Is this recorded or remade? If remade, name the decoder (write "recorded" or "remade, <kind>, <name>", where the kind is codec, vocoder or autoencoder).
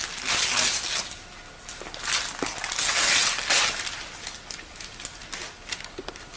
recorded